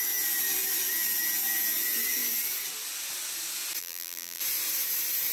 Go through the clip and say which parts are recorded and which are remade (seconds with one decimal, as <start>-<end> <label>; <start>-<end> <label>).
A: 0.0-3.8 recorded; 3.8-4.4 remade; 4.4-5.3 recorded

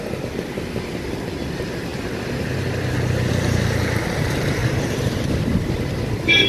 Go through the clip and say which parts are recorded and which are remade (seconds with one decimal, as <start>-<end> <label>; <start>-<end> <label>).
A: 0.0-4.6 recorded; 4.6-5.9 remade; 5.9-6.5 recorded

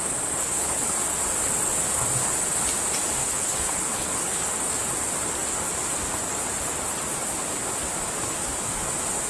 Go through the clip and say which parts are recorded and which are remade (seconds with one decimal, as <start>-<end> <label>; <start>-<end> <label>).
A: 0.0-0.4 recorded; 0.4-1.0 remade; 1.0-3.2 recorded; 3.2-4.4 remade; 4.4-9.3 recorded

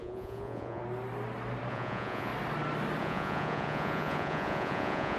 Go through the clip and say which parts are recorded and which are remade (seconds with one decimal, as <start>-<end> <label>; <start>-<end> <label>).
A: 0.0-0.8 remade; 0.8-1.7 recorded; 1.7-2.3 remade; 2.3-3.0 recorded; 3.0-5.2 remade

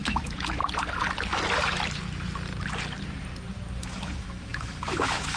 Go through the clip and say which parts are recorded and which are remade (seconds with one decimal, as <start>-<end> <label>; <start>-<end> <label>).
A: 0.0-0.6 remade; 0.6-3.8 recorded; 3.8-5.4 remade

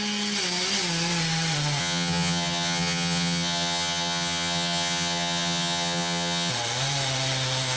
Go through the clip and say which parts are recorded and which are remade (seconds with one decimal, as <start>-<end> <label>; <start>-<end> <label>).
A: 0.0-1.8 recorded; 1.8-6.5 remade; 6.5-7.8 recorded

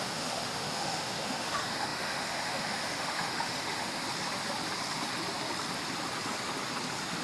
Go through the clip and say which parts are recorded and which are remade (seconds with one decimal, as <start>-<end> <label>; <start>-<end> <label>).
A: 0.0-4.0 remade; 4.0-7.2 recorded